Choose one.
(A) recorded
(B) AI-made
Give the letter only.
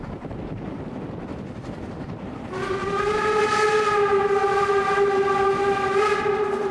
A